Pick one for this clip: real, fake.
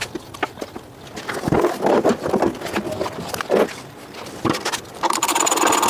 real